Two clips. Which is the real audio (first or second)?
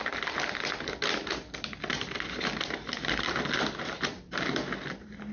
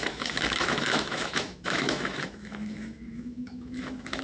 first